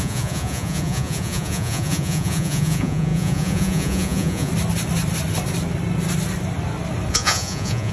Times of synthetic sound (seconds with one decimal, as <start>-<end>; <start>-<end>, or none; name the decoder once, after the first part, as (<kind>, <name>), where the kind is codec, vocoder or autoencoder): 0.0-4.5 (vocoder, Vocos); 7.1-7.9